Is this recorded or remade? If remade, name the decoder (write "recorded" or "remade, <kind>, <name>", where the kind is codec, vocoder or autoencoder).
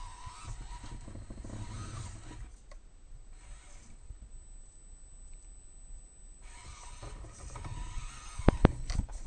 recorded